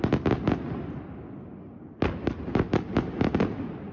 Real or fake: real